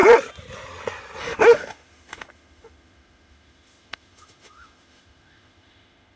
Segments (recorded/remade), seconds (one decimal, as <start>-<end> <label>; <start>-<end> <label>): 0.0-1.2 recorded; 1.2-6.2 remade